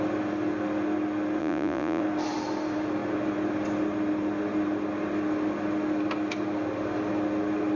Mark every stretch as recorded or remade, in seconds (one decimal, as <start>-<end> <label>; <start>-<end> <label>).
0.0-1.4 recorded; 1.4-2.0 remade; 2.0-7.8 recorded